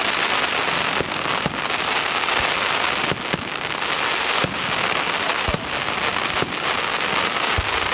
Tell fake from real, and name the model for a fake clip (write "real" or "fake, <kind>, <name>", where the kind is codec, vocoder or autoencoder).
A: real